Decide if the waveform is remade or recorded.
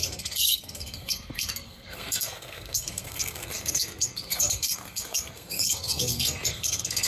remade